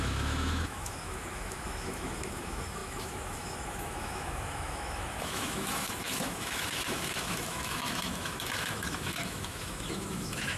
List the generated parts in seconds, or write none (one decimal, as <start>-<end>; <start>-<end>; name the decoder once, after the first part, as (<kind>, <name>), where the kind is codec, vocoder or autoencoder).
0.0-10.6 (autoencoder, DAC-VAE)